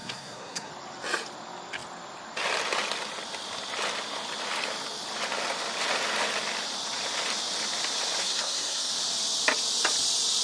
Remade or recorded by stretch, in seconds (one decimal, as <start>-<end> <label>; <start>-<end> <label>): 0.0-0.7 remade; 0.7-8.2 recorded; 8.2-8.9 remade; 8.9-10.4 recorded